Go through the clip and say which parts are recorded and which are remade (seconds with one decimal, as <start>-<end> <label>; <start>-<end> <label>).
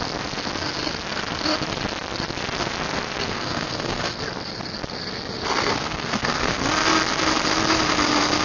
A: 0.0-3.3 recorded; 3.3-4.2 remade; 4.2-5.7 recorded; 5.7-6.6 remade; 6.6-8.4 recorded